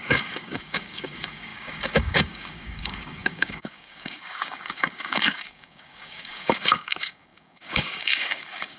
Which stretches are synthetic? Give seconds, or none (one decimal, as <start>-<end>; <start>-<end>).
0.0-8.8